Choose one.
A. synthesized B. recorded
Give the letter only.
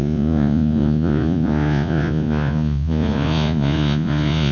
A